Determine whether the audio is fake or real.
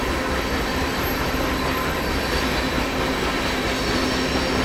real